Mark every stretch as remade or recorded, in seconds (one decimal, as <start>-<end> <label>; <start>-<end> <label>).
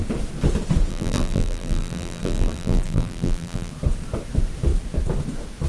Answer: 0.0-0.9 recorded; 0.9-3.7 remade; 3.7-5.7 recorded